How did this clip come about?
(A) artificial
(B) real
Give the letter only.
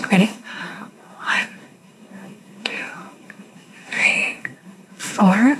A